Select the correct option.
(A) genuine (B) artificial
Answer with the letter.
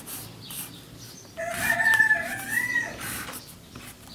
B